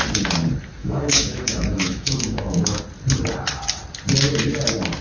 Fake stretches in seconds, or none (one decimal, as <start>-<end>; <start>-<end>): 0.8-2.8

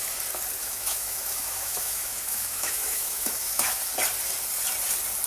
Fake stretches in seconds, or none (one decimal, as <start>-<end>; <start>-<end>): 0.6-3.8

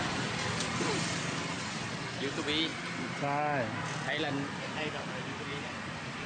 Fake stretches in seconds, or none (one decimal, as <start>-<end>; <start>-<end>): none

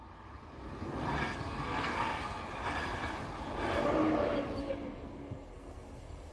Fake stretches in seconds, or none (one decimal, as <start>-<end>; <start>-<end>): 1.2-2.4; 4.6-6.3